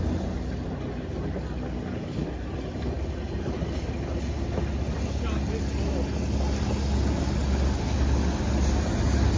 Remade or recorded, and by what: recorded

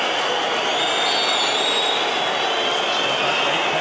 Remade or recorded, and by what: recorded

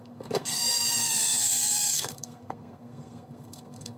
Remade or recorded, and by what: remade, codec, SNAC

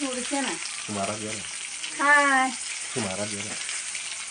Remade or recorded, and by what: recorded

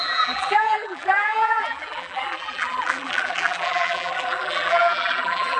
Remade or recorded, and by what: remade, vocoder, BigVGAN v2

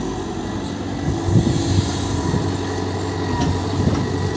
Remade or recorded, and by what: recorded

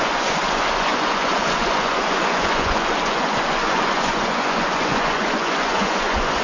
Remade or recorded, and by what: remade, vocoder, Vocos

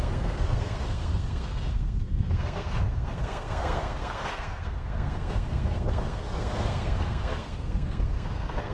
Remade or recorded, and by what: remade, codec, SNAC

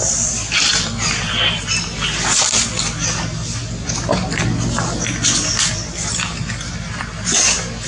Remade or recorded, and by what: recorded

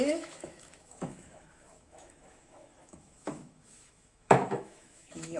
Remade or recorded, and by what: remade, autoencoder, DAC-VAE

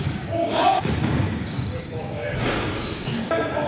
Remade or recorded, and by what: remade, codec, DAC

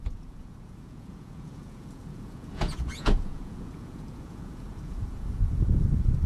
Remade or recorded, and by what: remade, vocoder, Vocos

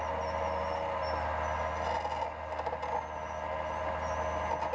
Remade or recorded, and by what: recorded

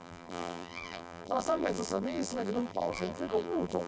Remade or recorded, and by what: remade, vocoder, BigVGAN v2